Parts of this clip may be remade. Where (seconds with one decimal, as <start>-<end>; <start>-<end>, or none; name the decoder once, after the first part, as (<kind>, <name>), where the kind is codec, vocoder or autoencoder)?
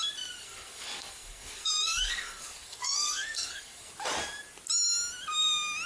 0.4-3.9 (codec, SNAC)